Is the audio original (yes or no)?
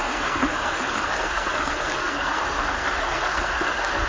no